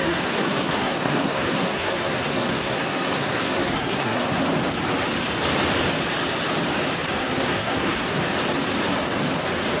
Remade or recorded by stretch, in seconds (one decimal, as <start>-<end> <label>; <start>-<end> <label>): 0.0-4.4 remade; 4.4-7.2 recorded; 7.2-8.2 remade; 8.2-9.8 recorded